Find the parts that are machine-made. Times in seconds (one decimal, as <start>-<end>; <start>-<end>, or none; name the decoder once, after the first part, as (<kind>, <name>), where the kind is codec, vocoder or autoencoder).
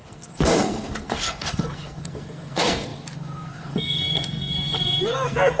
0.0-5.6 (codec, SNAC)